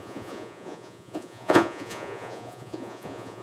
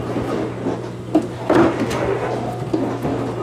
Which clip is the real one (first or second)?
second